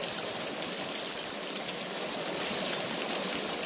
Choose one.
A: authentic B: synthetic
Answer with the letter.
B